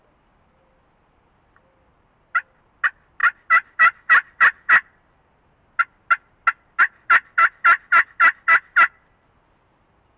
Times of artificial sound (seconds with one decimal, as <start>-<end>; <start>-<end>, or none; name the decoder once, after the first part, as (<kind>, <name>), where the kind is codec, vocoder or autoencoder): none